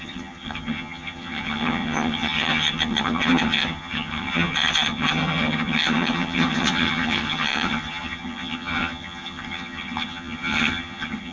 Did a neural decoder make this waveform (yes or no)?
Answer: yes